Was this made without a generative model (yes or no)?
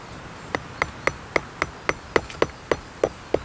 yes